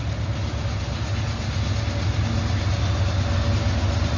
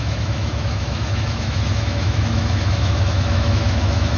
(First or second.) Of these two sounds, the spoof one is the second